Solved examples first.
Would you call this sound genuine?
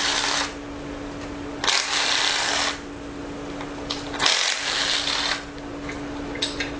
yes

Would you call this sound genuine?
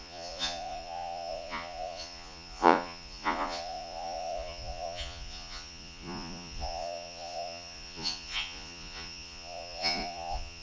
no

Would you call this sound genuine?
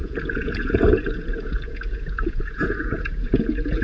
no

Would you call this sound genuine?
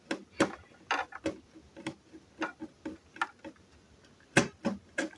yes